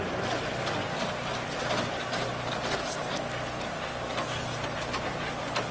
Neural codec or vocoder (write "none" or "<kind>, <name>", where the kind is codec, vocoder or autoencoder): none